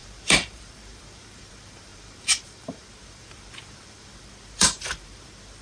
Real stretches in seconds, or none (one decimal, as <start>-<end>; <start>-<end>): none